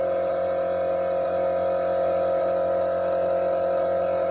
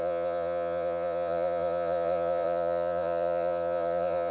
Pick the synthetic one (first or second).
second